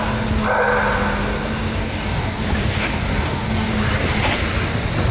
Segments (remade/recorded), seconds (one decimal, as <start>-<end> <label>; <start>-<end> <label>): 0.0-1.8 recorded; 1.8-2.4 remade; 2.4-2.9 recorded; 2.9-3.7 remade; 3.7-5.1 recorded